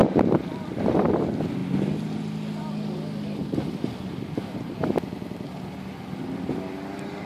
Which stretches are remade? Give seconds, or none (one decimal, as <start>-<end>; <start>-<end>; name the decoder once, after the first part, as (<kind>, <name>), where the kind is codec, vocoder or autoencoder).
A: 0.0-1.2 (vocoder, BigVGAN v2); 3.4-4.1